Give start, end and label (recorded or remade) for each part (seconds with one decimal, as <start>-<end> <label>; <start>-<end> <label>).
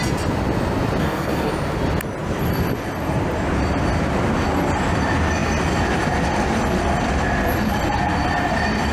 0.0-1.0 recorded; 1.0-1.5 remade; 1.5-8.9 recorded